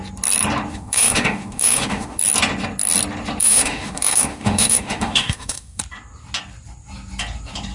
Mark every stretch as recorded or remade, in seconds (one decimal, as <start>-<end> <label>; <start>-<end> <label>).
0.0-0.7 recorded; 0.7-2.2 remade; 2.2-3.4 recorded; 3.4-5.8 remade; 5.8-7.7 recorded

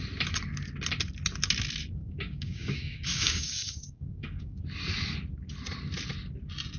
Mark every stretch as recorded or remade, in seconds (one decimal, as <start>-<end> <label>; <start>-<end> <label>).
0.0-2.0 recorded; 2.0-4.6 remade; 4.6-6.8 recorded

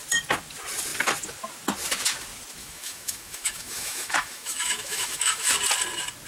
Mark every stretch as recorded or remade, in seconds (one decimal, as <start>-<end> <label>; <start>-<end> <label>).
0.0-2.6 recorded; 2.6-5.5 remade; 5.5-6.3 recorded

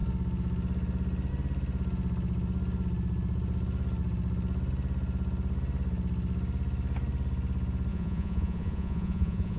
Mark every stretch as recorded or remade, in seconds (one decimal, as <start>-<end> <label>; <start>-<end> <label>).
0.0-7.9 recorded; 7.9-9.6 remade